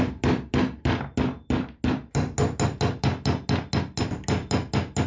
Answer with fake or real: real